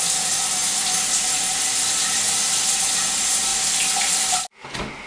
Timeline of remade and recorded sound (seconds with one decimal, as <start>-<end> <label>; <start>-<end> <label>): 0.0-5.1 recorded